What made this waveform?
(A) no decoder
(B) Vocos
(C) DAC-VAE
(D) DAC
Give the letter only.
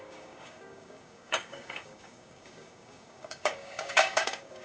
D